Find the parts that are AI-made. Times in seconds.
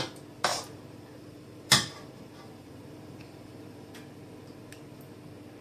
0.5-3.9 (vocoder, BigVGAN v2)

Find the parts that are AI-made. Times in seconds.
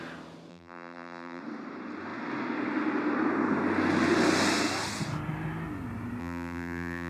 0.5-1.4 (vocoder, BigVGAN v2); 6.2-7.1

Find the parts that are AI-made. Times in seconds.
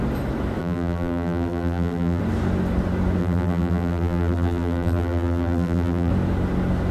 0.6-2.2 (vocoder, BigVGAN v2); 3.2-6.1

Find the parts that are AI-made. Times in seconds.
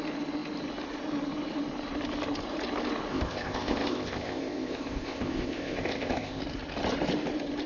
3.1-6.4 (codec, ZipCodec)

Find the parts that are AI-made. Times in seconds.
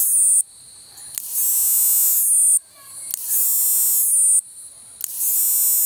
none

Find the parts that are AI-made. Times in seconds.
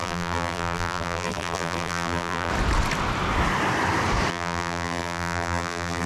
0.0-2.5 (vocoder, BigVGAN v2); 4.3-6.1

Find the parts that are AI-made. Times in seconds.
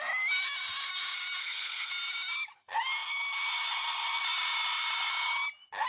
1.4-1.9 (codec, HILCodec)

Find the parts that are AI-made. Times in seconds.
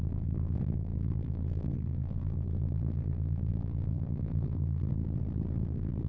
0.0-5.0 (codec, SNAC); 5.6-6.1